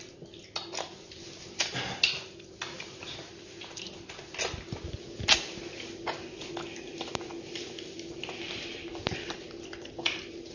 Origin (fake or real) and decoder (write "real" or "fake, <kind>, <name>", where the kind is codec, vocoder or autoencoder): real